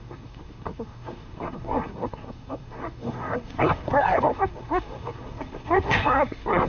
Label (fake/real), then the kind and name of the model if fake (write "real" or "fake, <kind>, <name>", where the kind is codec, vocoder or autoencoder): fake, codec, SNAC